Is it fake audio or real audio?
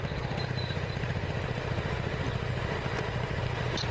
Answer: real